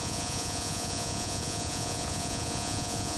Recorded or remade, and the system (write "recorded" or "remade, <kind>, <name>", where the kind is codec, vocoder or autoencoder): remade, vocoder, Vocos